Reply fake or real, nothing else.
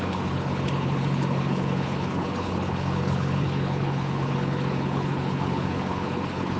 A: fake